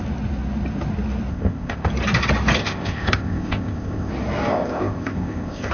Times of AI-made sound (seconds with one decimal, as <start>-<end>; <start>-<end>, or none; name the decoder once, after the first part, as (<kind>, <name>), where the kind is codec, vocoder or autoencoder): 1.3-1.9 (codec, ZipCodec); 2.6-4.1; 4.5-5.7